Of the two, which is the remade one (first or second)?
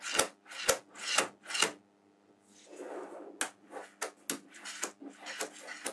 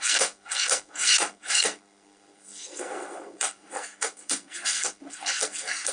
second